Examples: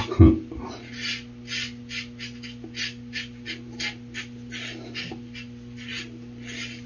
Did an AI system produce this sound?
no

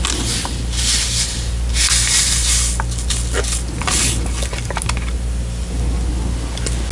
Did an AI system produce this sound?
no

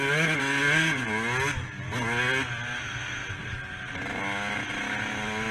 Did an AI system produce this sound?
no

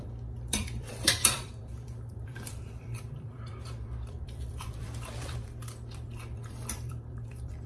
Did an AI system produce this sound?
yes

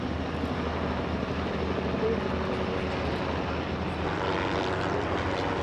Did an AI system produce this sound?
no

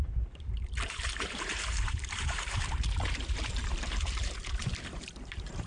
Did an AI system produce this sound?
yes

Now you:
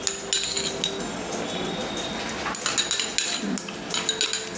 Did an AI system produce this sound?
no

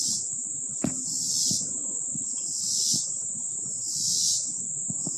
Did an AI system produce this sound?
no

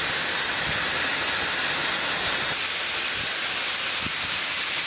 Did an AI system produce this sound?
yes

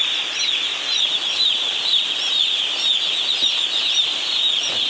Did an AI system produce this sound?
no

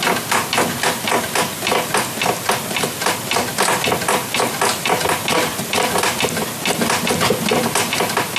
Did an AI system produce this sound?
no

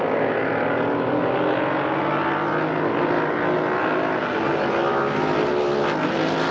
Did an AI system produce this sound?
no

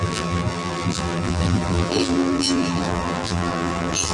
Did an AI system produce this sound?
yes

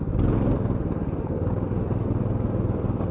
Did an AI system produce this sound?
yes